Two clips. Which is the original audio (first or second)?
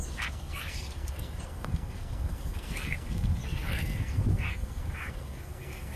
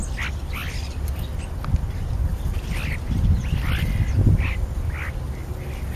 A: second